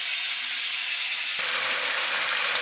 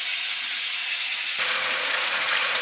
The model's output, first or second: second